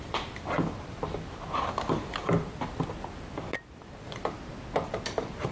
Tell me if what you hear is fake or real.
real